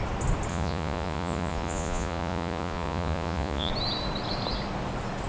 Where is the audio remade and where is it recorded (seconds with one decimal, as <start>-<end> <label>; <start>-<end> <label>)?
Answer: 0.0-0.5 recorded; 0.5-3.7 remade; 3.7-5.3 recorded